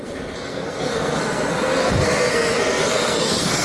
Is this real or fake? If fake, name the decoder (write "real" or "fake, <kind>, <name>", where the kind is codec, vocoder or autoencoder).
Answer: fake, codec, SNAC